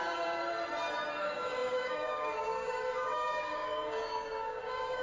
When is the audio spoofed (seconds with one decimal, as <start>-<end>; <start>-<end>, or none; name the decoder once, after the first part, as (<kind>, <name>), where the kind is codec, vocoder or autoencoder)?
0.0-0.4 (codec, DAC); 1.2-5.0

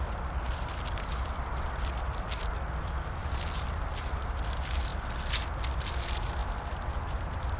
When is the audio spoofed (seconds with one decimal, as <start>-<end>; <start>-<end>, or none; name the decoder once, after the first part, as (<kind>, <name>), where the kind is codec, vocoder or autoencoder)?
none

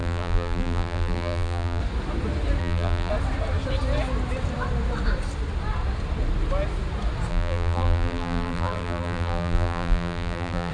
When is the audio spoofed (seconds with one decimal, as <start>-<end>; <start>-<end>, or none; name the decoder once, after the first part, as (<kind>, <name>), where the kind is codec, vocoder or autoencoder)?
0.0-1.8 (vocoder, BigVGAN v2); 2.6-3.1; 7.3-10.7

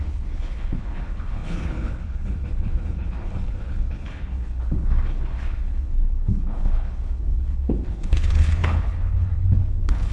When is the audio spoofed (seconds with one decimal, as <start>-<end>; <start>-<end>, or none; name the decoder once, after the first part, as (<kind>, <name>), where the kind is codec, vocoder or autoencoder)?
0.0-10.1 (codec, HILCodec)